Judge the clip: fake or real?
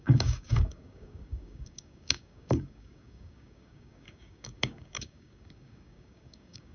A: fake